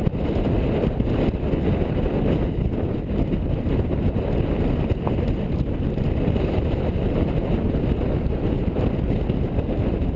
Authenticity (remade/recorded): recorded